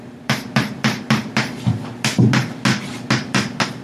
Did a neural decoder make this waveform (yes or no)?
no